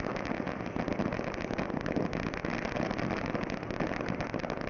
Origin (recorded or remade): recorded